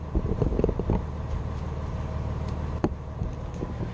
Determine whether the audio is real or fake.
real